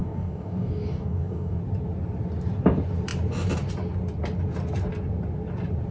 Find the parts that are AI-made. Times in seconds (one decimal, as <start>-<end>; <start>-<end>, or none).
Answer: 0.0-1.6

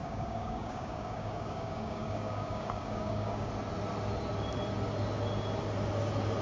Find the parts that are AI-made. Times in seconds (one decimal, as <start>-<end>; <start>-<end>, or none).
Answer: 0.0-3.5